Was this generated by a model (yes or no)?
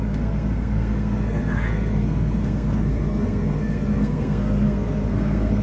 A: yes